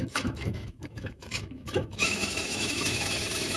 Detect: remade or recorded remade